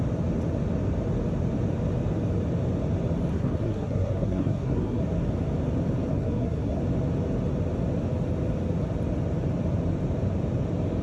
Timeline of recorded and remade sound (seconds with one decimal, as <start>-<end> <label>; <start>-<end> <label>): 0.0-3.3 recorded; 3.3-5.0 remade; 5.0-6.1 recorded; 6.1-6.8 remade; 6.8-11.0 recorded